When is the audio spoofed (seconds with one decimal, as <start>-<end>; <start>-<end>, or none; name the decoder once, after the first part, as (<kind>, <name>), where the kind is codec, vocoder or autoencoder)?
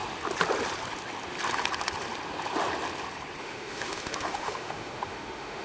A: 3.4-5.6 (autoencoder, DAC-VAE)